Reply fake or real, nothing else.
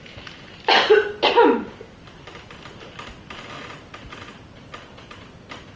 real